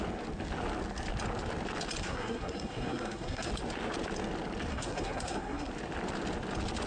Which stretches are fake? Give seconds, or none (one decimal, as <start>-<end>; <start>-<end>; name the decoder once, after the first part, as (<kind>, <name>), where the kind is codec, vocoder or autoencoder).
2.0-3.5 (codec, SNAC); 4.7-5.7